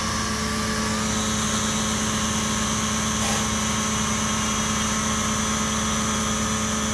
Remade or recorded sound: recorded